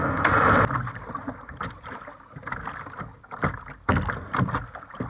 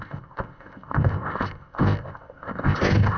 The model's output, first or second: second